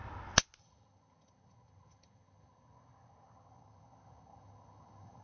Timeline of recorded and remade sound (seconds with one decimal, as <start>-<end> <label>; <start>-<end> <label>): 0.0-0.6 recorded; 0.6-5.2 remade